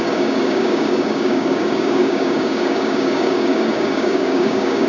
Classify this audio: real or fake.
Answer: fake